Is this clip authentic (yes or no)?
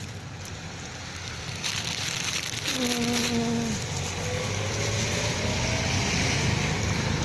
yes